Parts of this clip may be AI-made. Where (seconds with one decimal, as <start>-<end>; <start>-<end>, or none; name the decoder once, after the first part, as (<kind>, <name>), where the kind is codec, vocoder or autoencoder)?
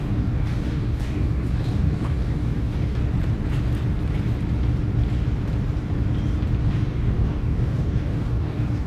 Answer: 0.0-3.0 (codec, DAC); 6.6-8.9